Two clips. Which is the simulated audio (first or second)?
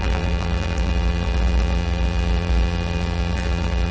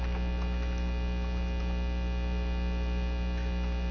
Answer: first